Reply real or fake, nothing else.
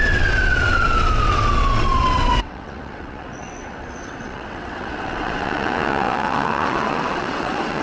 fake